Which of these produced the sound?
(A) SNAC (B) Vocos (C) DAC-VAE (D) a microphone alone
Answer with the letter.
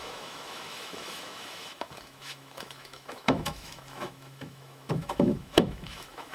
C